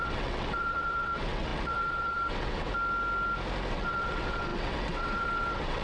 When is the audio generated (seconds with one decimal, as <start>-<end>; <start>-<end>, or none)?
0.0-2.7; 3.7-5.8